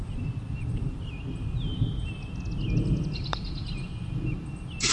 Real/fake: real